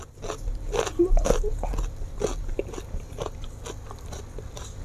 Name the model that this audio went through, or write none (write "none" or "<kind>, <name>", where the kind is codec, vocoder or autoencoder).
none